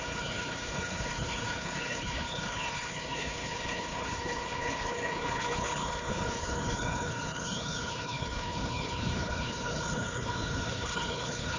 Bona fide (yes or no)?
no